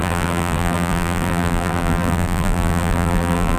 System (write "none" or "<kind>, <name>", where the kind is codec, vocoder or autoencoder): vocoder, BigVGAN v2